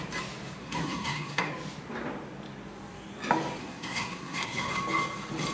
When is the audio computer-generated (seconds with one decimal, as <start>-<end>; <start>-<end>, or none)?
0.6-1.5; 3.6-4.7